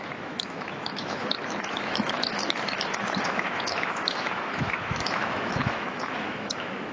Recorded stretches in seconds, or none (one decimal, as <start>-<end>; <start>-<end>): none